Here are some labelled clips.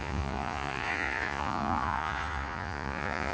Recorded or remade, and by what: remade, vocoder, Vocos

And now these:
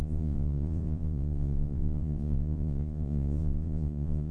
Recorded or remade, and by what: remade, vocoder, Vocos